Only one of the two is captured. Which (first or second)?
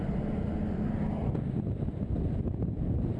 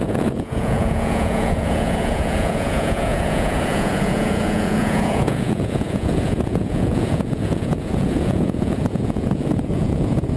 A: first